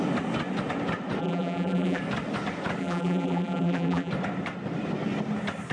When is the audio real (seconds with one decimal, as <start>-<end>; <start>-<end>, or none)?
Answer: 0.0-1.2; 2.0-2.8; 4.1-5.7